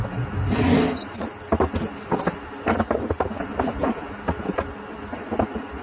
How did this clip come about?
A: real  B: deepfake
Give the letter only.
A